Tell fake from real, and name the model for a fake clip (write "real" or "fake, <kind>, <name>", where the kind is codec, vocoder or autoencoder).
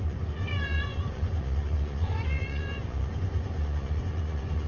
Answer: fake, vocoder, Vocos